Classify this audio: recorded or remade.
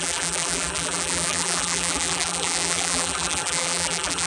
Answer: remade